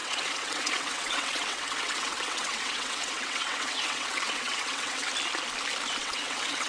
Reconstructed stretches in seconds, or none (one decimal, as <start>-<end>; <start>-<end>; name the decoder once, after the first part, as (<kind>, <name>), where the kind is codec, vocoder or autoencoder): 0.0-5.1 (vocoder, WaveNeXt); 6.0-6.7